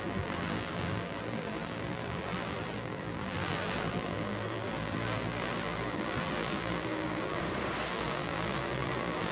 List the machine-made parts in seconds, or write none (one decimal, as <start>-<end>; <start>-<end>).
0.0-7.4; 7.9-9.3

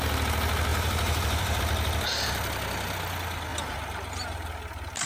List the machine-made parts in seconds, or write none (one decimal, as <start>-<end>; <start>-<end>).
0.7-1.6

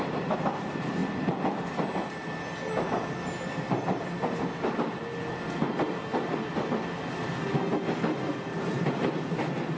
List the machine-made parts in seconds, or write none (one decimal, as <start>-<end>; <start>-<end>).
0.0-1.0; 3.4-5.0; 8.4-9.8

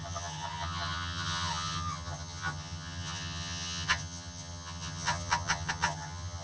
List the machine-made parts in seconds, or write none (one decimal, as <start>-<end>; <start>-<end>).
0.0-6.4

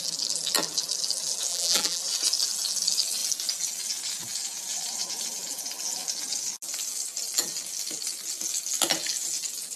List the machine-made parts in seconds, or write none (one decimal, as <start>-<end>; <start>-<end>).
1.5-2.0

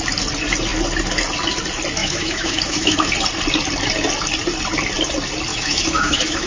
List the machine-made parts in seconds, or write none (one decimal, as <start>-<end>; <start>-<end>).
2.0-3.1; 5.5-6.5

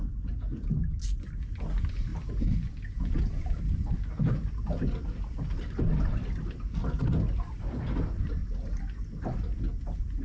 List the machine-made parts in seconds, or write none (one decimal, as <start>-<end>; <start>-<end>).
none

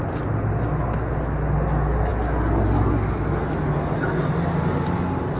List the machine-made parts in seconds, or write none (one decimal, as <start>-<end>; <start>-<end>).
none